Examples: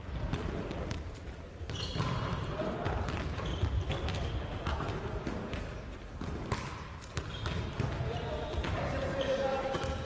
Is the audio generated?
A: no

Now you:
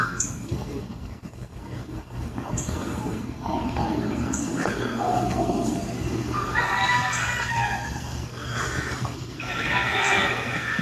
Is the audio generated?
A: yes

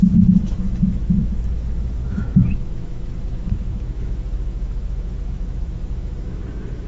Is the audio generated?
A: yes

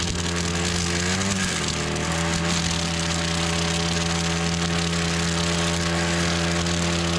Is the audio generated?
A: no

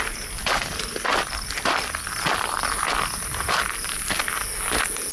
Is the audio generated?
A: no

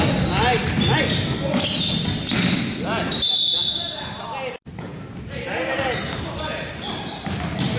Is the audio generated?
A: no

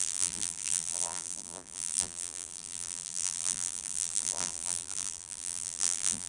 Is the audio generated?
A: yes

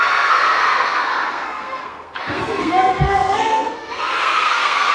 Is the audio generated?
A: yes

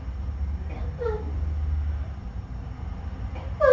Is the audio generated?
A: no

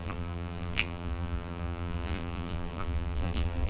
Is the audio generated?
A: yes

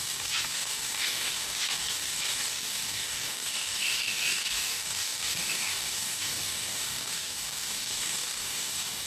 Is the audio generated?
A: yes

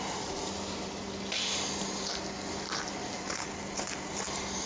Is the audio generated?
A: no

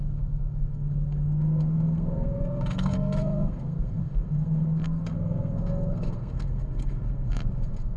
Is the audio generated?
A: yes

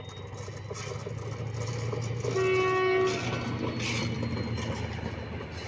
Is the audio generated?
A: no